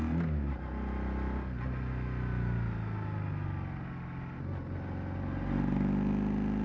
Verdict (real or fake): real